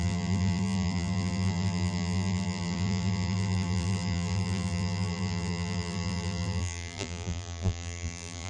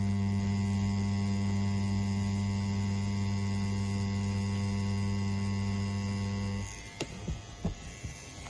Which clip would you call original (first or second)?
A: second